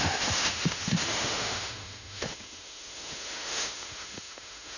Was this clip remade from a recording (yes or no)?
yes